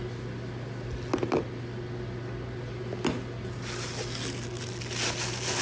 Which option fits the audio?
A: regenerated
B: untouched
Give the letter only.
B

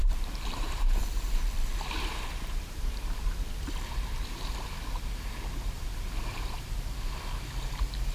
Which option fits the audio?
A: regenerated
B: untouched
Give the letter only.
A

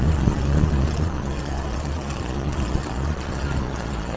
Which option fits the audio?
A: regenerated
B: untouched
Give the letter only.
A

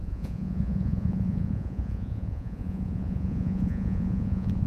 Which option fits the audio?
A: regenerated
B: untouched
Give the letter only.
A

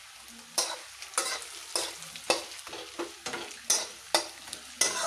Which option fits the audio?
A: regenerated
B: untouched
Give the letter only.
B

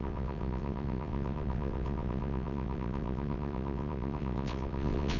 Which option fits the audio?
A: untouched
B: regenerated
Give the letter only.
B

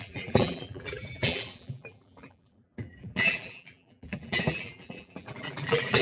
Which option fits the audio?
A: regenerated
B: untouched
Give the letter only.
A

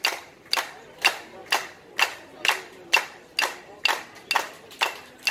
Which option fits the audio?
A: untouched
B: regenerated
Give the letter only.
A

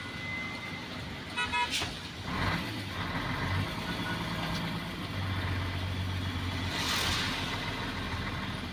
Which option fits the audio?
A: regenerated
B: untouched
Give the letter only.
B